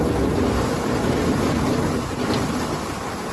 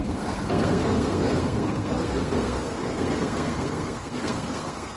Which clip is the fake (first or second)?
second